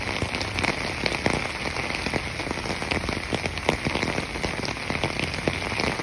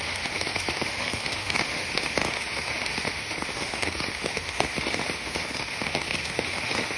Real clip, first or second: first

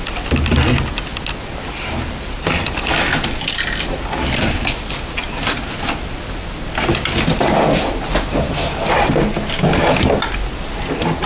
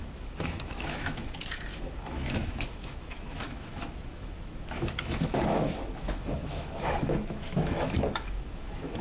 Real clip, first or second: first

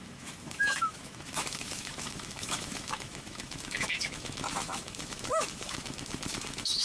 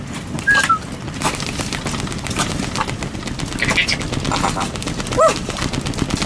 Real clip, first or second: second